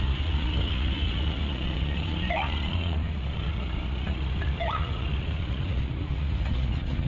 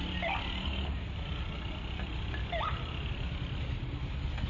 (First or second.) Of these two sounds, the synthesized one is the first